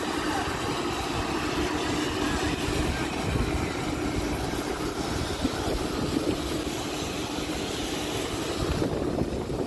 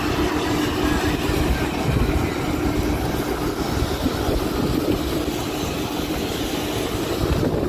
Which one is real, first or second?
second